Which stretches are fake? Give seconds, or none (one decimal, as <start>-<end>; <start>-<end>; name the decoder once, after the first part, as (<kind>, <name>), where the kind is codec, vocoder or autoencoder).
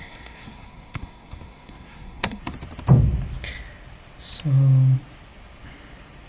0.0-2.4 (codec, SNAC)